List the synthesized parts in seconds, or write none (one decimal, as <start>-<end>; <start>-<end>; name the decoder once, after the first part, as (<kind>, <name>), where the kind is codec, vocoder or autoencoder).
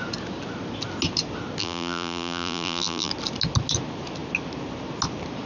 1.6-3.1 (vocoder, BigVGAN v2)